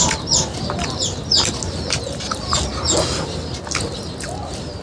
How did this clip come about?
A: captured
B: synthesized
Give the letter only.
A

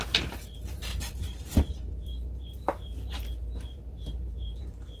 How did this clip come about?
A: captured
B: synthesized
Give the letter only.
B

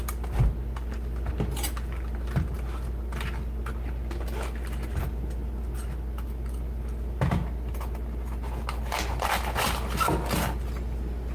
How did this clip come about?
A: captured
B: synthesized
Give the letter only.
A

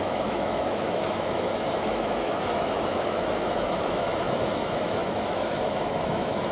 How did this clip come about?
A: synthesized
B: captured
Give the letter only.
A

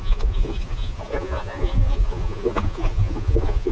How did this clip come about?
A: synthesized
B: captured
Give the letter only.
A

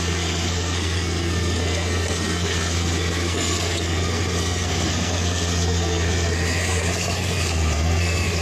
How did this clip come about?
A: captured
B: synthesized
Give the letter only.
B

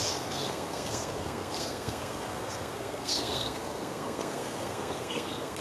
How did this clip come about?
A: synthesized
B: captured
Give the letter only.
A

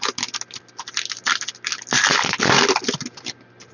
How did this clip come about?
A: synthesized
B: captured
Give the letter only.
B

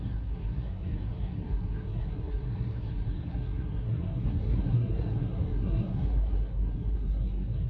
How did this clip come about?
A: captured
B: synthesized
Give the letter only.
B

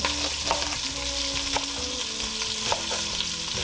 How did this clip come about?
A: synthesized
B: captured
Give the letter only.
B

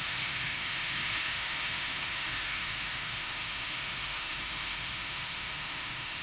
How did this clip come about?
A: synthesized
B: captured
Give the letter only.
A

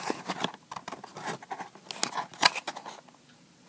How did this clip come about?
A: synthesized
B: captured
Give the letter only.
B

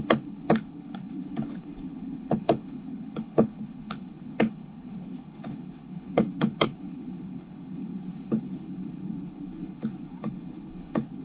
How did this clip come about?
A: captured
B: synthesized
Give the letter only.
B